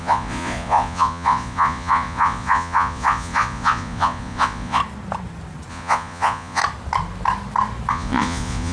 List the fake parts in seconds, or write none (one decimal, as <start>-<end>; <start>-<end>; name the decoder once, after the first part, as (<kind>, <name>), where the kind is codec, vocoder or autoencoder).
0.0-4.8 (vocoder, Vocos); 5.7-6.6; 7.9-8.7